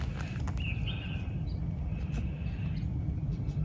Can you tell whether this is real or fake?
real